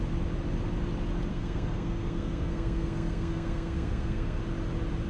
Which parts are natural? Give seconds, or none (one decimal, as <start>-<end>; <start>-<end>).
0.0-1.3; 4.4-5.1